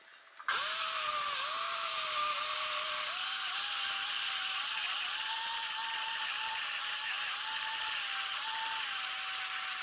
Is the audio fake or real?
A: real